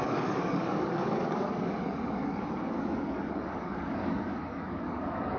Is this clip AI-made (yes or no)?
yes